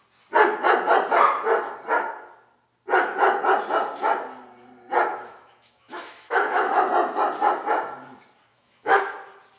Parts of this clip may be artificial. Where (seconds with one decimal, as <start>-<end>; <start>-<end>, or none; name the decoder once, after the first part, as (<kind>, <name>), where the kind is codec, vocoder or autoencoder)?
5.1-6.9 (autoencoder, DAC-VAE); 8.5-9.0